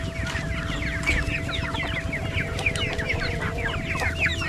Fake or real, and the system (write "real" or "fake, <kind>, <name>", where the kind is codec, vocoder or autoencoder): real